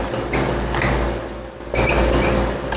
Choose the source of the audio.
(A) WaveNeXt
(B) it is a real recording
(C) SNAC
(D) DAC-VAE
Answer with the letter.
B